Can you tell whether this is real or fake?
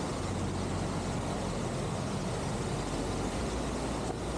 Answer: real